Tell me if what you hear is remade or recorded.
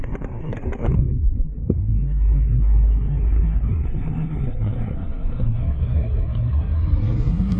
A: remade